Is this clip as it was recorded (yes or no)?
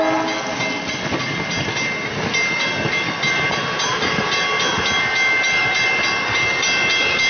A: yes